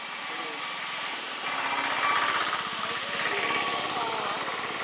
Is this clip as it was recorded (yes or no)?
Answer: yes